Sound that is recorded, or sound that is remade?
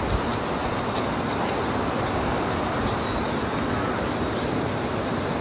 recorded